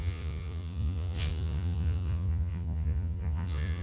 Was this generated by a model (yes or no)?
yes